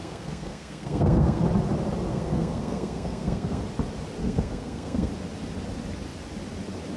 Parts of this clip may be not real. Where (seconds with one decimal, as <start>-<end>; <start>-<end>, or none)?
0.0-1.4; 2.1-3.6; 4.2-5.1